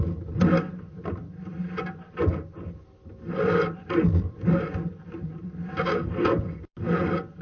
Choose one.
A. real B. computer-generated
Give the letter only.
A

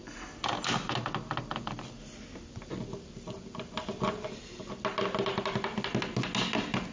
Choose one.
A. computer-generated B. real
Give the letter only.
B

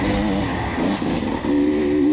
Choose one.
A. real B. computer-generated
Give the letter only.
A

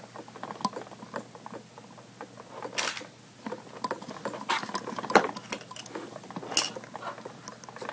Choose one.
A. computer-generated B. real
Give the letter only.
B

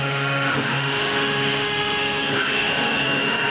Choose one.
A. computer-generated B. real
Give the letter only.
A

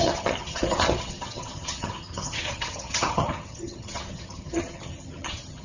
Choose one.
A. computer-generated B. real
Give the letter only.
A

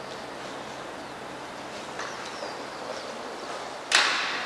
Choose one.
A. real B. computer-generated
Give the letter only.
A